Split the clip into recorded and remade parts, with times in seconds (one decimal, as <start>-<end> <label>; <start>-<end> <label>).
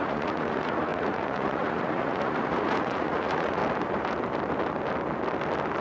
0.0-3.6 remade; 3.6-5.8 recorded